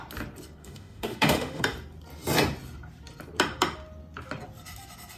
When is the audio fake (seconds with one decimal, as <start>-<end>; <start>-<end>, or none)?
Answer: 0.6-1.6